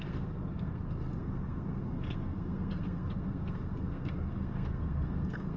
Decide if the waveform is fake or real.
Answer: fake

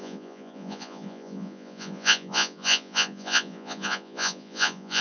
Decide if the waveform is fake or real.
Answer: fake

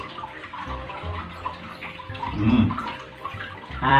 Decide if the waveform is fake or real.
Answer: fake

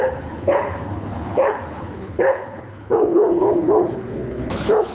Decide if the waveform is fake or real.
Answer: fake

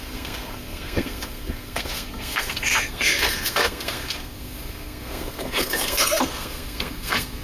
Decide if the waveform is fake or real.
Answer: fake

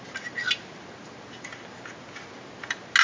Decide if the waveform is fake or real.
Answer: real